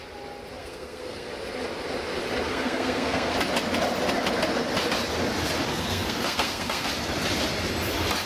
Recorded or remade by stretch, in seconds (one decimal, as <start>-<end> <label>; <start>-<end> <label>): 0.0-0.6 recorded; 0.6-1.3 remade; 1.3-2.5 recorded; 2.5-3.3 remade; 3.3-5.7 recorded; 5.7-6.9 remade; 6.9-8.3 recorded